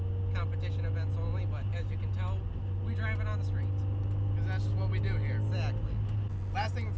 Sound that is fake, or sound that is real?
real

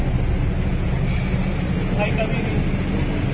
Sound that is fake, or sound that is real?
real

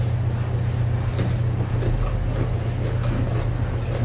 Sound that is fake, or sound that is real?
real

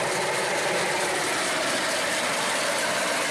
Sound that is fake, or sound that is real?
real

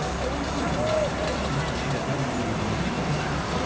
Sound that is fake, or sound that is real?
real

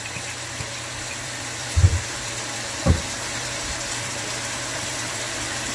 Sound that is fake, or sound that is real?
fake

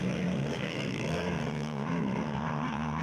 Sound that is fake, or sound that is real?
fake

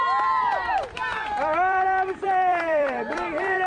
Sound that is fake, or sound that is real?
fake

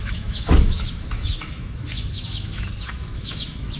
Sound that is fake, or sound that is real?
fake